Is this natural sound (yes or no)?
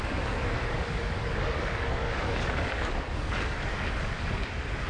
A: no